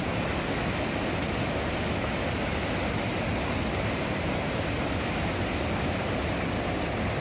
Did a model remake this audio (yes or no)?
no